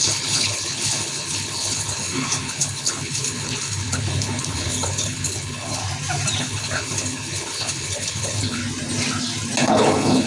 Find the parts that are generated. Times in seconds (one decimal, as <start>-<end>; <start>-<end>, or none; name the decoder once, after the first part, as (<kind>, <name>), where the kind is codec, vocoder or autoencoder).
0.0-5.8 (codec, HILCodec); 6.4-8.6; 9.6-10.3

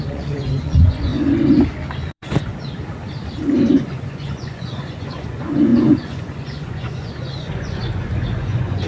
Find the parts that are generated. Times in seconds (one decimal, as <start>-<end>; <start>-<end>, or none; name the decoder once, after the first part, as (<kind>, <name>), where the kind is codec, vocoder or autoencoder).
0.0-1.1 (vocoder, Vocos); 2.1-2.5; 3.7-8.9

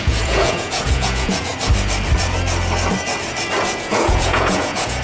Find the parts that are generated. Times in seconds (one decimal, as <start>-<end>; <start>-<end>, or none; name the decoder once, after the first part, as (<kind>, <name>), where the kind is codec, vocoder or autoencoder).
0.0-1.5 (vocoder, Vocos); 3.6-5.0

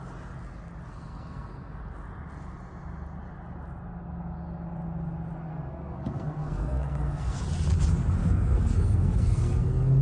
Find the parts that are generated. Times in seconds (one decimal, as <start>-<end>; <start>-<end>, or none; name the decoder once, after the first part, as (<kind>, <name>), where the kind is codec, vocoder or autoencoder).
0.9-1.8 (codec, SNAC); 5.5-7.4; 8.2-10.0